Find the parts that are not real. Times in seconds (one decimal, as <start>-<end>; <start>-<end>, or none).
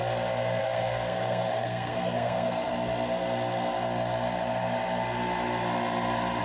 0.6-2.7